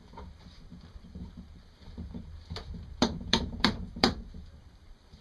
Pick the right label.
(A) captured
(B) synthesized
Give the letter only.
B